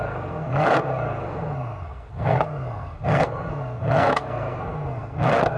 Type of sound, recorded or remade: remade